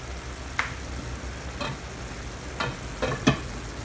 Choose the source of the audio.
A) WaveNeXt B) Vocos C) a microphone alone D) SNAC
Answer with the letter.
C